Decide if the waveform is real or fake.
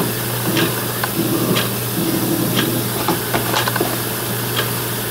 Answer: real